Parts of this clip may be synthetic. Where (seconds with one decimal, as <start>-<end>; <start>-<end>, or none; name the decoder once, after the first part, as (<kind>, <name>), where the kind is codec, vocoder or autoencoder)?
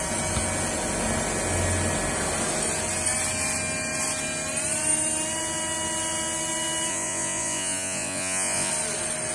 6.9-8.7 (vocoder, Vocos)